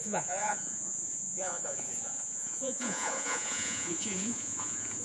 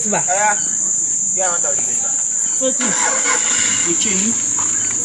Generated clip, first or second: first